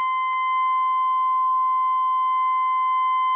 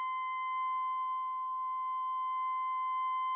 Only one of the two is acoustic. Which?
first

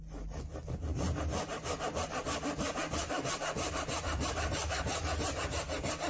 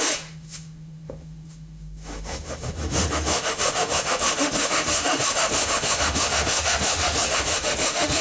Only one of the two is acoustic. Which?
first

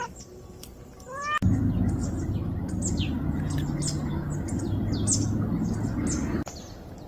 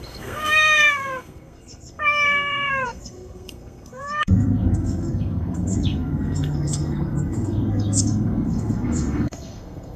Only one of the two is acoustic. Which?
first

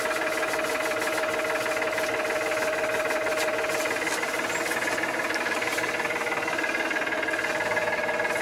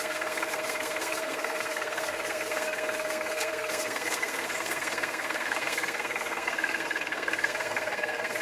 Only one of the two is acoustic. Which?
first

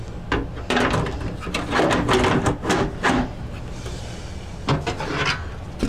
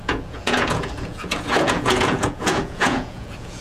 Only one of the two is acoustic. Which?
first